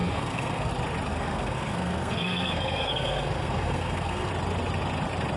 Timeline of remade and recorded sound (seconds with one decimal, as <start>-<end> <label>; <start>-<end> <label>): 0.0-0.7 remade; 0.7-1.1 recorded; 1.1-4.3 remade; 4.3-5.4 recorded